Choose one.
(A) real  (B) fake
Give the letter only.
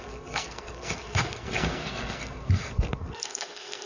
B